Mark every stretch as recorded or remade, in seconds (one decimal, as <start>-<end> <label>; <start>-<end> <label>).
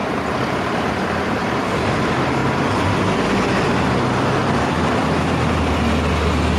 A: 0.0-2.4 remade; 2.4-6.6 recorded